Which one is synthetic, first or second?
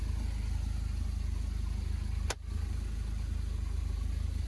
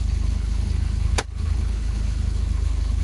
second